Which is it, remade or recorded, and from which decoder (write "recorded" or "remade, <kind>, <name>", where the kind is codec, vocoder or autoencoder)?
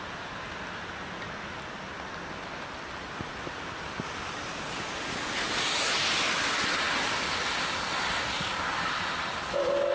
recorded